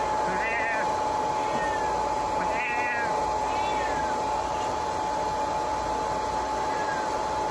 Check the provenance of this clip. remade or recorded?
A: recorded